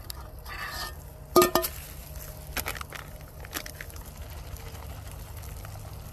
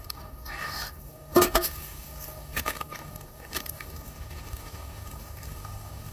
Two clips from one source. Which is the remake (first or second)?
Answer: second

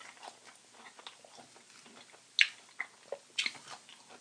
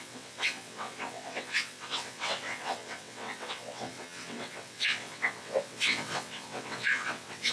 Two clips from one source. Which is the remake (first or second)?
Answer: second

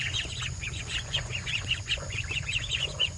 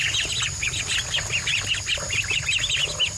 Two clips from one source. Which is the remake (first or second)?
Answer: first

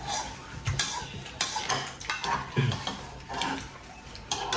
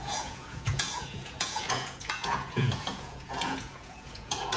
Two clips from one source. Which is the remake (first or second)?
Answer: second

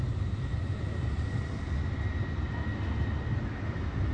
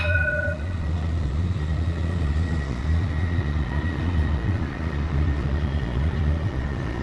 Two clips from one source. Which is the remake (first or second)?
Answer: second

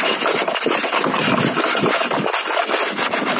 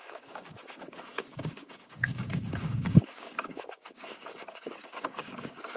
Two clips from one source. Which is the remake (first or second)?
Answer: second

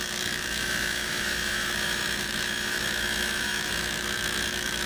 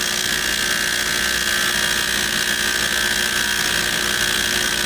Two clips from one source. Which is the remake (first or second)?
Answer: first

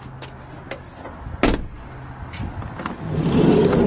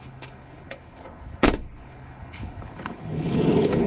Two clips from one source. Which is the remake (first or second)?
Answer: second